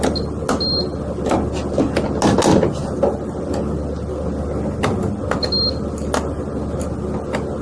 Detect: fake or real real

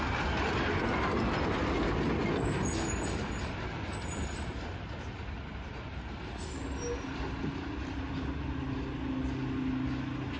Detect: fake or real real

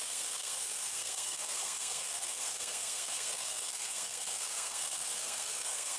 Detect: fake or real fake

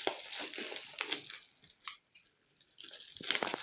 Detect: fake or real real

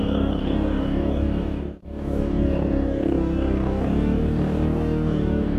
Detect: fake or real fake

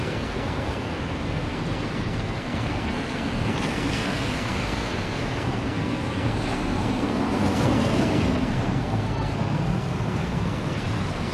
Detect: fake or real fake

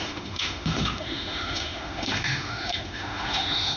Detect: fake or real fake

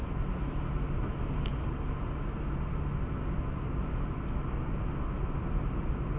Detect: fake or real real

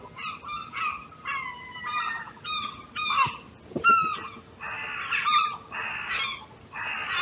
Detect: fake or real real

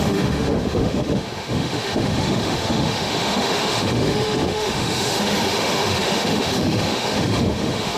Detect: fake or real fake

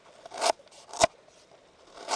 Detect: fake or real real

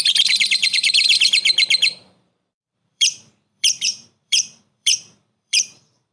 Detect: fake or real fake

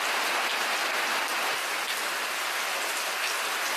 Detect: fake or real real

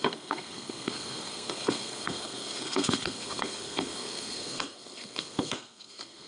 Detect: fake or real fake